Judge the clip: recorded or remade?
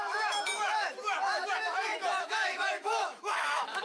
remade